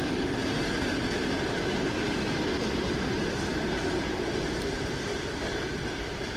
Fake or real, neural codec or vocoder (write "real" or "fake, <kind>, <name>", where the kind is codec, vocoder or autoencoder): fake, vocoder, BigVGAN v2